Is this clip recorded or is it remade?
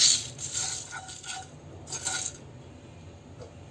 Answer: recorded